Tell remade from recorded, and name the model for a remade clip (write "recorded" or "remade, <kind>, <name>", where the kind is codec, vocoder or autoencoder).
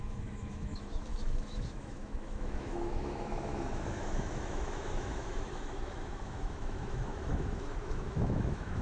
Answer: remade, autoencoder, DAC-VAE